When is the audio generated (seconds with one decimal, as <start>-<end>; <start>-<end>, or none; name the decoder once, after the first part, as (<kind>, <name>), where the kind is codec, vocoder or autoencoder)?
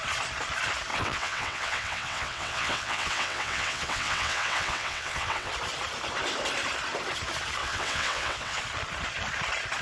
0.9-5.5 (vocoder, WaveNeXt); 7.6-8.6